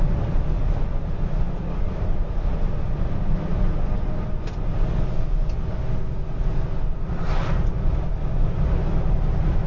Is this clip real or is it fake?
real